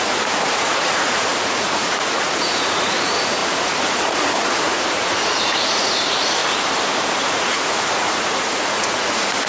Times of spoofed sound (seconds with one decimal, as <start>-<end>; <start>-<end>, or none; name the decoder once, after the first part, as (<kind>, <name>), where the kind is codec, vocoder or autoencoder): 0.0-6.4 (vocoder, Vocos); 7.1-9.5